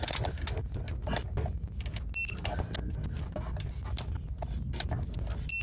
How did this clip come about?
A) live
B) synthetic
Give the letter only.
A